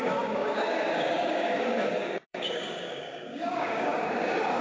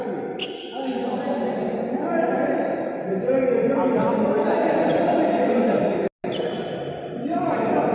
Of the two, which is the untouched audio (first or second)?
second